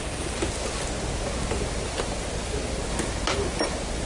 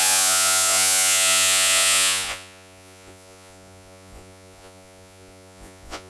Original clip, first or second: first